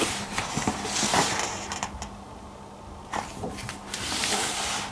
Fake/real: real